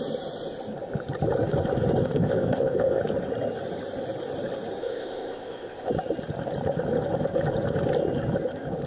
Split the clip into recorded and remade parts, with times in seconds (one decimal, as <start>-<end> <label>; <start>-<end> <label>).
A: 0.0-2.0 recorded; 2.0-3.0 remade; 3.0-4.8 recorded; 4.8-5.9 remade; 5.9-8.9 recorded